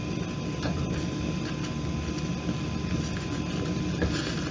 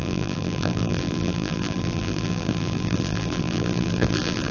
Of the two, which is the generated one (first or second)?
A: second